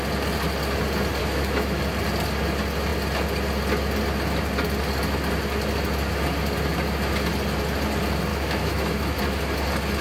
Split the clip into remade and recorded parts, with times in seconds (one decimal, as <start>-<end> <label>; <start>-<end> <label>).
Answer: 0.0-1.2 recorded; 1.2-1.8 remade; 1.8-8.3 recorded; 8.3-9.2 remade; 9.2-10.0 recorded